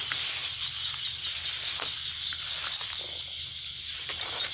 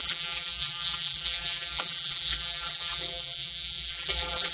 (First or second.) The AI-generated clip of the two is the second